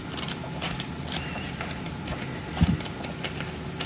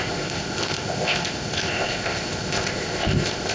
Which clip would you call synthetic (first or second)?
second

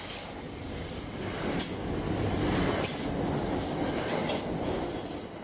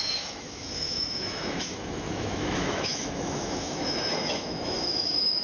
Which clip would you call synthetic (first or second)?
second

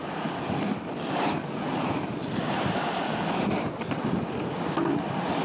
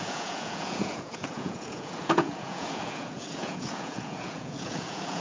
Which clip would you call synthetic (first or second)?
second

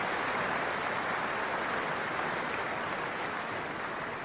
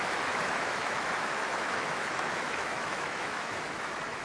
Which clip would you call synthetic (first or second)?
second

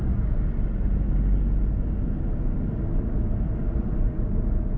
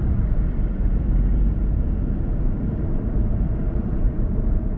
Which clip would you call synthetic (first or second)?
second